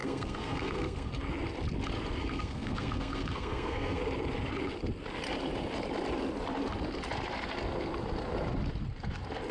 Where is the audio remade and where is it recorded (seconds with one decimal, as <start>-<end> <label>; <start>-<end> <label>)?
0.0-1.1 remade; 1.1-2.2 recorded; 2.2-4.0 remade; 4.0-9.5 recorded